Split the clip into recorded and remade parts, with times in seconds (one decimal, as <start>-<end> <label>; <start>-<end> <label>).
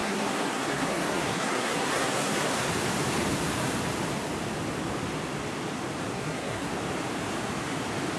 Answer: 0.0-2.7 remade; 2.7-6.1 recorded; 6.1-6.7 remade; 6.7-8.2 recorded